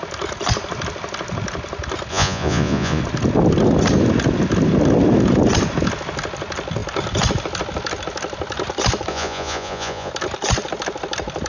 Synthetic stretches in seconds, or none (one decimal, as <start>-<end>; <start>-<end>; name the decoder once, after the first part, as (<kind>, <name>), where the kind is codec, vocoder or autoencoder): 2.1-3.0 (vocoder, Vocos); 9.1-10.1